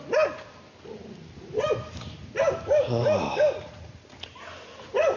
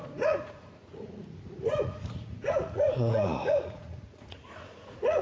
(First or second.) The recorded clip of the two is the first